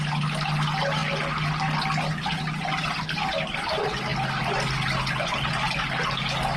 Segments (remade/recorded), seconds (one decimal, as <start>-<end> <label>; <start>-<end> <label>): 0.0-6.6 recorded

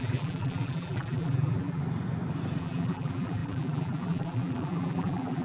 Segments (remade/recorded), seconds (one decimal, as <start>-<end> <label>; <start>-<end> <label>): 0.0-1.8 remade; 1.8-2.6 recorded; 2.6-5.4 remade

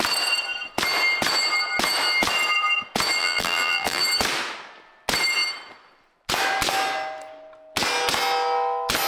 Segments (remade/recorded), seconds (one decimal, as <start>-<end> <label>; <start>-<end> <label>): 0.0-3.2 recorded; 3.2-4.0 remade; 4.0-9.1 recorded

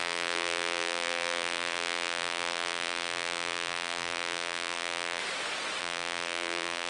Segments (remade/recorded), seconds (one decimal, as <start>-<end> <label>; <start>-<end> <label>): 0.0-5.2 remade; 5.2-5.8 recorded; 5.8-6.9 remade

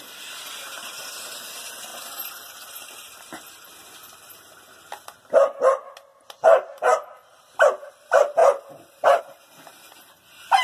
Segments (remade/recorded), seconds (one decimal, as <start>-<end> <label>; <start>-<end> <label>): 0.0-1.9 recorded; 1.9-3.9 remade; 3.9-6.1 recorded; 6.1-7.4 remade; 7.4-8.4 recorded; 8.4-9.2 remade; 9.2-10.6 recorded